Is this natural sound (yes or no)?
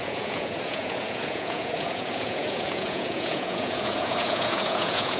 no